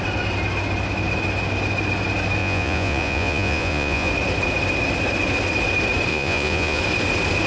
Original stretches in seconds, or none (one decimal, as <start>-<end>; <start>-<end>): 0.0-2.4; 4.1-6.1; 6.8-7.5